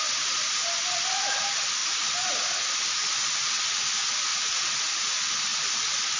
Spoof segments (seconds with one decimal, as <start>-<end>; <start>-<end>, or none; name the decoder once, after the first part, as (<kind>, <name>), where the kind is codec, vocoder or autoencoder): 1.8-2.3 (vocoder, BigVGAN v2); 5.5-6.2

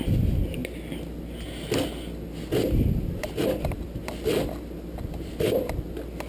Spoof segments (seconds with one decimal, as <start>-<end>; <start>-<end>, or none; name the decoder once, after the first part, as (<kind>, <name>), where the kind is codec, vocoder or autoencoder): none

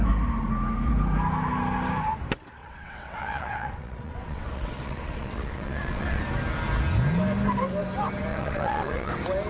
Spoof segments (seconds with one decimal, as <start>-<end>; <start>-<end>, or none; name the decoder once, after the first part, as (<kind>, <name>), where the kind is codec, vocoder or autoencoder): 2.6-6.2 (vocoder, WaveNeXt); 8.3-9.1

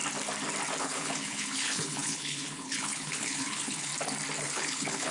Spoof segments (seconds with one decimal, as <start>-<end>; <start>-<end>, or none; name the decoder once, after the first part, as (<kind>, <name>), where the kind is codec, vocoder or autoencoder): 0.8-3.9 (codec, HILCodec); 4.4-5.1